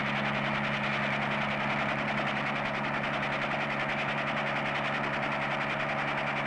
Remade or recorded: recorded